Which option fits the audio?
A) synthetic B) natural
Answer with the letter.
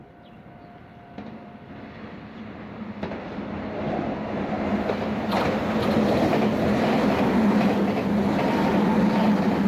B